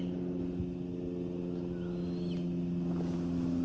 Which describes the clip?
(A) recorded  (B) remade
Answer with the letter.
A